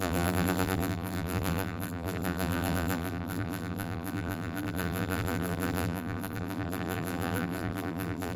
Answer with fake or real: fake